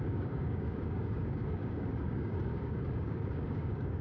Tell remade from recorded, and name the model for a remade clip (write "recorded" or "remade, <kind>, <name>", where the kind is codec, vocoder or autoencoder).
remade, codec, DAC